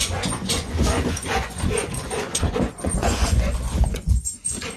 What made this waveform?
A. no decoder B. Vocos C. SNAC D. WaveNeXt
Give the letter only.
B